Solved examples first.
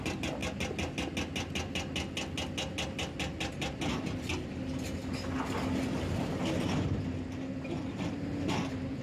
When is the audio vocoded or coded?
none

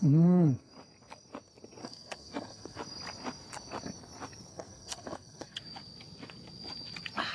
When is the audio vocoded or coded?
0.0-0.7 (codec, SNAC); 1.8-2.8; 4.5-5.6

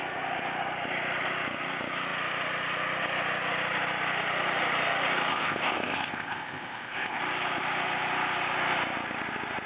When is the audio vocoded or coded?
5.3-7.2 (codec, ZipCodec)